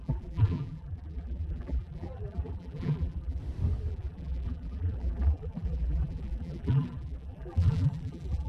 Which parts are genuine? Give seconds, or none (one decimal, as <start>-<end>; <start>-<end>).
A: 3.4-3.9